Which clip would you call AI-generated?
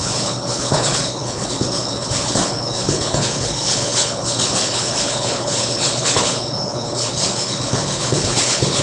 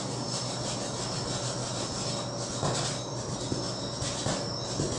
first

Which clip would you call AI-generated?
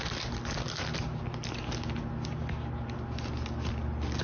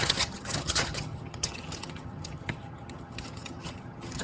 second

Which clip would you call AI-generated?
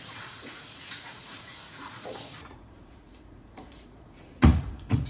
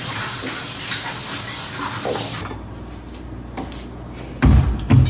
first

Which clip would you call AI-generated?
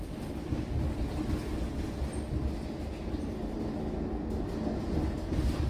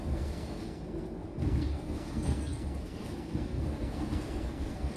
second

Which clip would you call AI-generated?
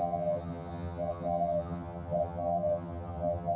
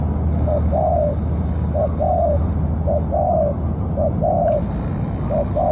first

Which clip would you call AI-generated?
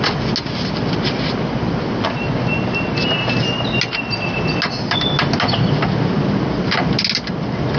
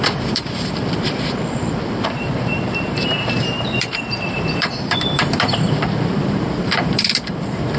second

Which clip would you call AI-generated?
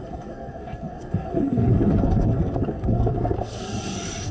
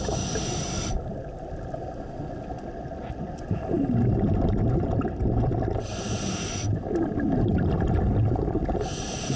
first